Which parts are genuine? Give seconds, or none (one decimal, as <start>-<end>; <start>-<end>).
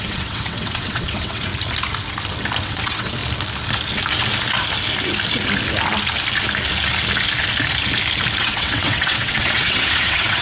1.5-2.6; 3.2-8.4